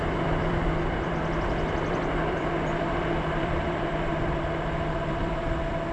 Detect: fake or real fake